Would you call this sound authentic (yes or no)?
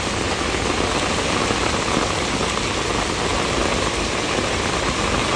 yes